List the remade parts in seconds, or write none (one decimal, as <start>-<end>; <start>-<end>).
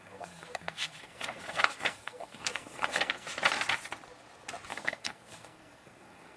0.0-3.3; 4.7-6.4